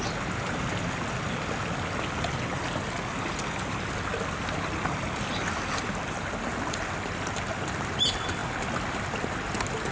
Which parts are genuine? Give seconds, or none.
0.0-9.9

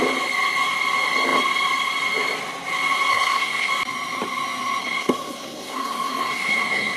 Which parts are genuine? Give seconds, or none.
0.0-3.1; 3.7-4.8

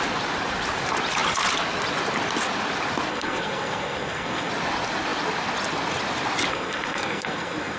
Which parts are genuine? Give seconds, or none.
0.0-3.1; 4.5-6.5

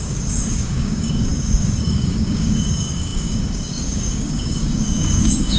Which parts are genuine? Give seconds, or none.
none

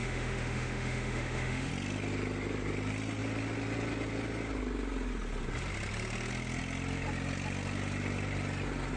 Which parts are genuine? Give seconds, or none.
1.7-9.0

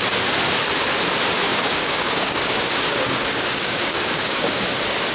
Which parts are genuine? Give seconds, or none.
0.0-1.5; 4.6-5.1